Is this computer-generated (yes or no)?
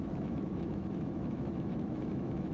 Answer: yes